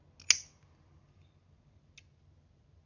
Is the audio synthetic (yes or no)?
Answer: no